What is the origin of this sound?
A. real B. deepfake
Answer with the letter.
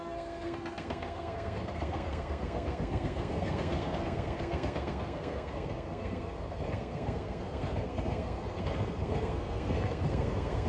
B